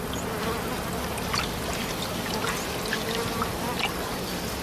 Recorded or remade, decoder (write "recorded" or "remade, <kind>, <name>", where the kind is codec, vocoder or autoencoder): recorded